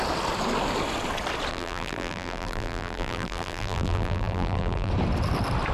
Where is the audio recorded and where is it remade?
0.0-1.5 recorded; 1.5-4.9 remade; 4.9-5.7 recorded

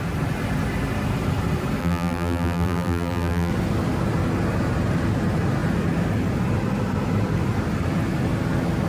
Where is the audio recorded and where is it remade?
0.0-1.8 recorded; 1.8-3.5 remade; 3.5-8.9 recorded

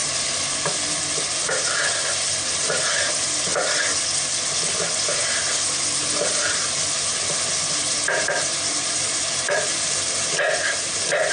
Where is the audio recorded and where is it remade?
0.0-1.2 recorded; 1.2-3.5 remade; 3.5-8.7 recorded; 8.7-11.3 remade